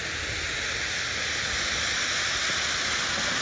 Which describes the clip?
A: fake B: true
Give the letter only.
B